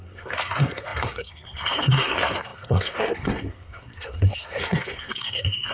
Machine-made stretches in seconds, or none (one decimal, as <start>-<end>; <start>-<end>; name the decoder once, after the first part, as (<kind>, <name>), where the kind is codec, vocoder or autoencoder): 0.0-5.7 (codec, SNAC)